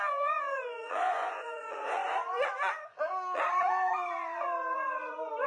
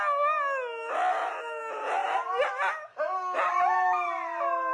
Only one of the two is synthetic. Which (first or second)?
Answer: first